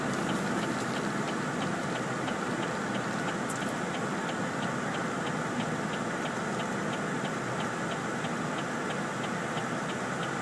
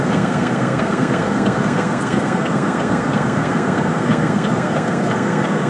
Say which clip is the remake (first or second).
second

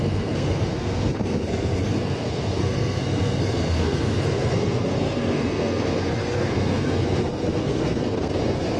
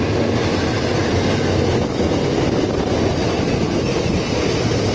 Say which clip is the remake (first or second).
first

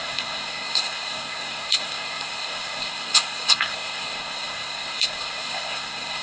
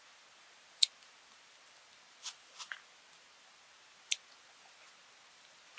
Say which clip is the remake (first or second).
first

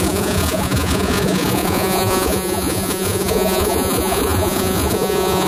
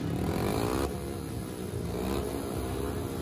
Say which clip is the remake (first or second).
first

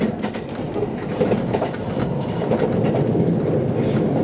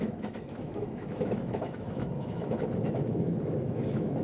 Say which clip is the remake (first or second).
second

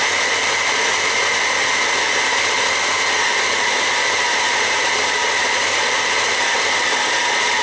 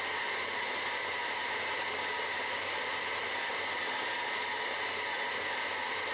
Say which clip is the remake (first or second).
first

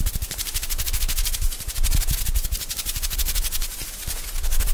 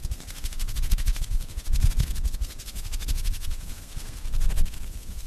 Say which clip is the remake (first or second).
second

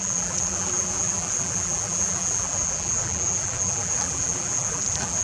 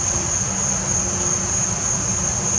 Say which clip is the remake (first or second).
first